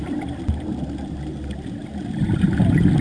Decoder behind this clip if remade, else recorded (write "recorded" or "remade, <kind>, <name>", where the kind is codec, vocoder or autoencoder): recorded